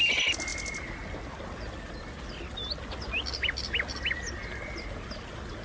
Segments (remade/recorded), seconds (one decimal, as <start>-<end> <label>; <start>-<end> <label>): 0.0-5.6 recorded